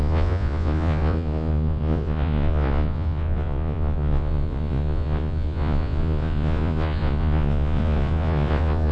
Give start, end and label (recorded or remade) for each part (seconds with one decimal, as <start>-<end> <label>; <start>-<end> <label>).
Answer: 0.0-8.9 remade